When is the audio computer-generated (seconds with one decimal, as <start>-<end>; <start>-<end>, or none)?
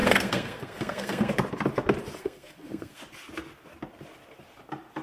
0.0-1.3; 2.2-3.0